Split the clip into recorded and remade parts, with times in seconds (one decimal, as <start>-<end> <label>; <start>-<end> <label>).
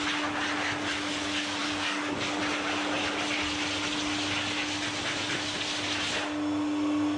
0.0-1.6 recorded; 1.6-2.4 remade; 2.4-7.2 recorded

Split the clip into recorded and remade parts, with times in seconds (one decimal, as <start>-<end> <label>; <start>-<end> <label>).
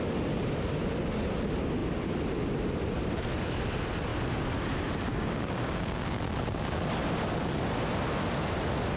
0.0-5.1 recorded; 5.1-6.2 remade; 6.2-9.0 recorded